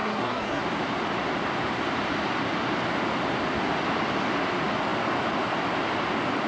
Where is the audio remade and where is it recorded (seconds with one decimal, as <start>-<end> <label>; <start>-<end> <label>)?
0.0-0.6 remade; 0.6-6.5 recorded